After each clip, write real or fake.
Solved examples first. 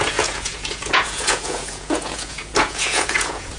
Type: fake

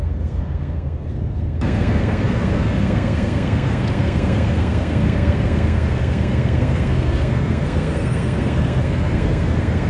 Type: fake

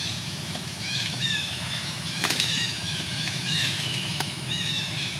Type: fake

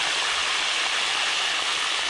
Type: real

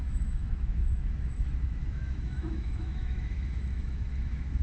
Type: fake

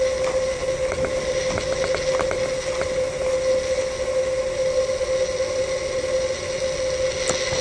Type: real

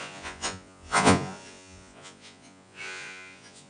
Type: fake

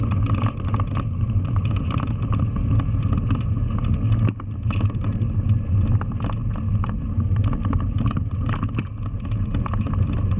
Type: real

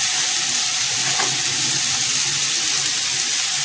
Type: real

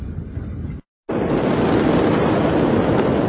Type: real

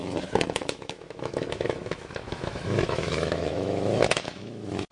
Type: fake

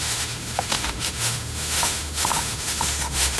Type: fake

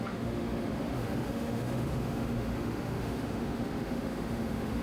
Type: fake